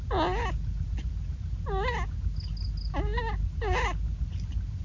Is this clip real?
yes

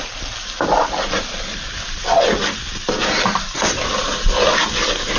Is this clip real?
yes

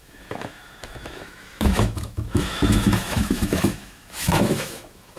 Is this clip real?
no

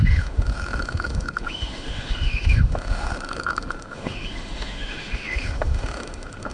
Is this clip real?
no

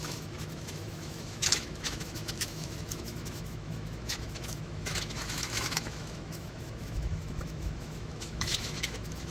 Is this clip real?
no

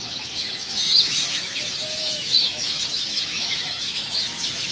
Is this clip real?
no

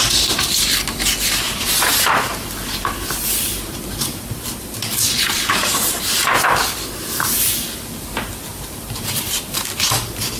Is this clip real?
yes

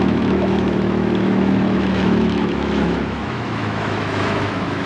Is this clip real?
no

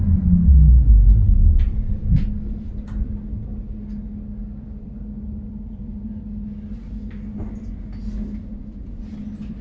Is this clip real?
yes